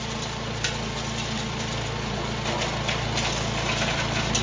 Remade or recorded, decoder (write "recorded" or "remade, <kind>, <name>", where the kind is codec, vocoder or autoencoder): recorded